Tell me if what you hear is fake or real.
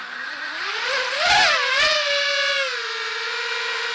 real